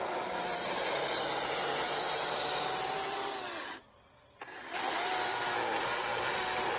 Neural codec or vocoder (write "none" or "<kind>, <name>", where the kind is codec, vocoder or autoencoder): none